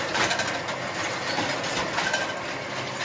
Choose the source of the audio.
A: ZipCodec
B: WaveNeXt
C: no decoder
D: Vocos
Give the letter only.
C